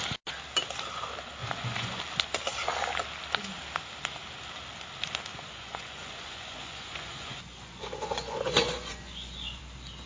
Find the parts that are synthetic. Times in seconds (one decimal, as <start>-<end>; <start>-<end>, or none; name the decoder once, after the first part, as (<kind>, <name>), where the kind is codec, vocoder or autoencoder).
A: 1.4-2.0 (vocoder, Vocos); 5.3-9.6